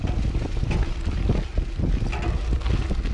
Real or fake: real